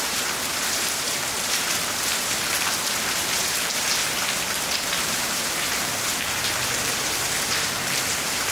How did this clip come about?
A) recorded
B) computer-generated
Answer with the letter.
B